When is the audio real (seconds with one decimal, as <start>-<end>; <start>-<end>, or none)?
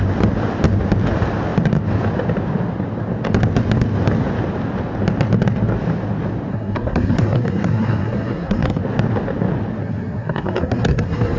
0.0-6.5; 8.8-9.8